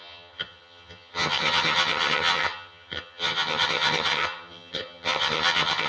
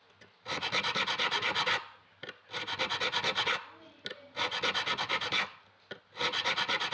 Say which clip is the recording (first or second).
second